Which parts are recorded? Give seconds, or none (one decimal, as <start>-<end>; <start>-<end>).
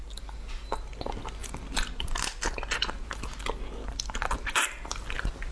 0.0-5.5